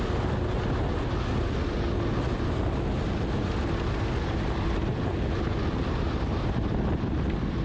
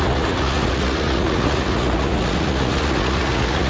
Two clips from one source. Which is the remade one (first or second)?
second